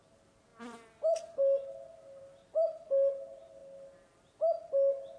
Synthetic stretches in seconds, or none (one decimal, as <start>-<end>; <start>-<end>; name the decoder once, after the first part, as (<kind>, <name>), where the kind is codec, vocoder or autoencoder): none